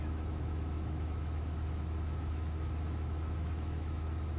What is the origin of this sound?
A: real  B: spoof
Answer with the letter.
B